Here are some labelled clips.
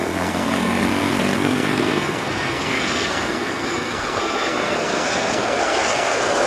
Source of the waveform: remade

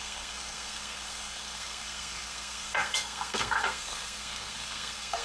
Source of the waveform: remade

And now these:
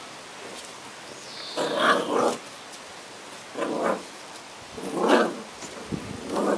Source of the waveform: recorded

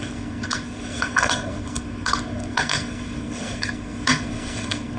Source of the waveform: remade